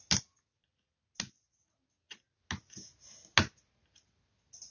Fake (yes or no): no